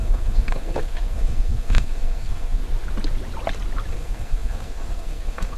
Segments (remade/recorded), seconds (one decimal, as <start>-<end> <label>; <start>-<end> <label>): 0.0-2.6 remade; 2.6-3.9 recorded; 3.9-5.6 remade